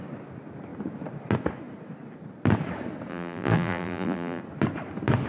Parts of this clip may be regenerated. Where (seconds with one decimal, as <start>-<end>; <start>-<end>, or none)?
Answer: 3.1-4.4